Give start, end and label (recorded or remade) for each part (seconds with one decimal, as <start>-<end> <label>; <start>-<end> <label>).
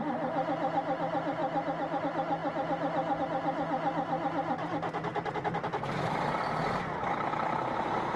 0.0-8.2 recorded